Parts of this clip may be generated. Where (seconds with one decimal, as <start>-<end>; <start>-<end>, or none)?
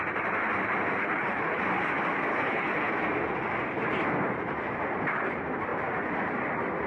1.0-1.6; 2.3-2.9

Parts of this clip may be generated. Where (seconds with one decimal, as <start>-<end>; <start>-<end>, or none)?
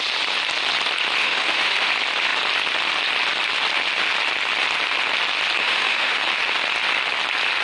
1.2-1.9; 5.6-6.2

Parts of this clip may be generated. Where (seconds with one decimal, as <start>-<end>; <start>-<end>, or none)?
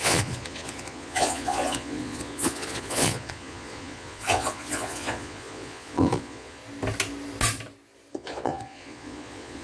0.0-6.6; 8.1-9.6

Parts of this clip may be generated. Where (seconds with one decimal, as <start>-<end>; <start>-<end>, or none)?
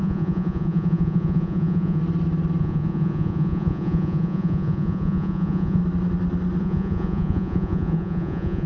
0.0-2.0; 2.6-5.8; 6.6-8.7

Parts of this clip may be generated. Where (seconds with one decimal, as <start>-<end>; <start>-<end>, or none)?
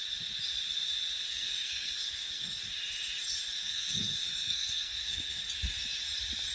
1.3-2.6; 3.6-5.5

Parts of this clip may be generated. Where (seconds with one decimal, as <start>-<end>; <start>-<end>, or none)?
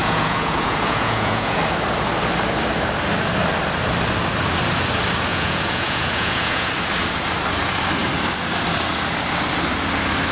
0.0-1.6; 5.3-6.7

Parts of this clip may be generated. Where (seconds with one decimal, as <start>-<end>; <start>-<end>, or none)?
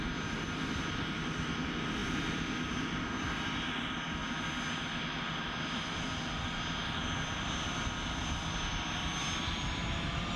none